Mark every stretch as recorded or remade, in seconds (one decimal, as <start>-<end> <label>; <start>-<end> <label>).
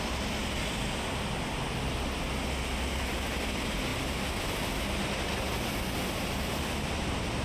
0.0-7.4 recorded